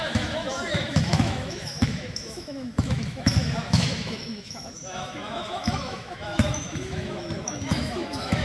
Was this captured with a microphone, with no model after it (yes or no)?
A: no